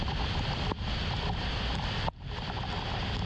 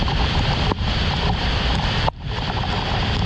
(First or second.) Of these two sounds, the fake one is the second